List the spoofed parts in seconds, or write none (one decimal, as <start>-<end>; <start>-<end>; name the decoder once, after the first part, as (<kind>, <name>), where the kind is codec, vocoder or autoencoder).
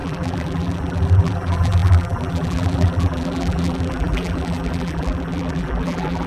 0.0-6.3 (vocoder, BigVGAN v2)